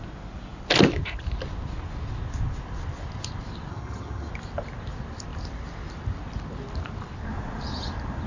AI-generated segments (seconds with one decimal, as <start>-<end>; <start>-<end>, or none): 3.7-4.3